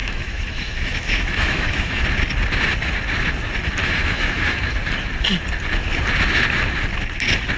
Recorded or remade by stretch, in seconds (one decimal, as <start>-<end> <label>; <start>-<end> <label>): 0.0-2.0 remade; 2.0-3.8 recorded; 3.8-4.6 remade; 4.6-7.6 recorded

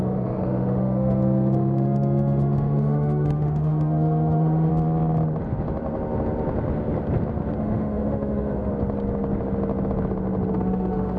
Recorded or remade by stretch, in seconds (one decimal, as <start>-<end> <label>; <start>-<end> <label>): 0.0-4.7 remade; 4.7-7.6 recorded; 7.6-8.7 remade; 8.7-10.5 recorded; 10.5-11.2 remade

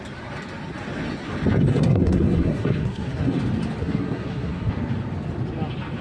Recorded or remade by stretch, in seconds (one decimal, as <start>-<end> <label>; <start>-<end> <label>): 0.0-1.7 recorded; 1.7-3.4 remade; 3.4-3.8 recorded; 3.8-4.7 remade; 4.7-6.0 recorded

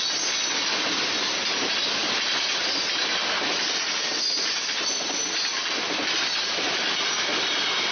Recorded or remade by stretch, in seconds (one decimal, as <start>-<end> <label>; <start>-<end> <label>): 0.0-7.9 recorded

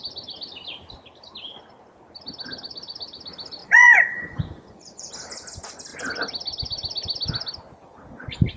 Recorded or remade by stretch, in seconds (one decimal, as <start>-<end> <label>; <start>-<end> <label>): 0.0-3.6 recorded; 3.6-5.1 remade; 5.1-8.6 recorded

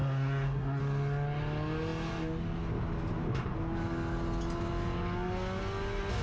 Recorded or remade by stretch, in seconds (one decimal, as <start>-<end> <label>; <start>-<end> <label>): 0.0-0.8 remade; 0.8-6.2 recorded

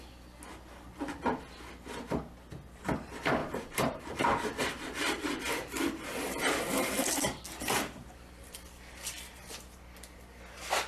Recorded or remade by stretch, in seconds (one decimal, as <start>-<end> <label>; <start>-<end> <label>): 0.0-0.9 recorded; 0.9-1.4 remade; 1.4-3.4 recorded; 3.4-7.4 remade; 7.4-10.9 recorded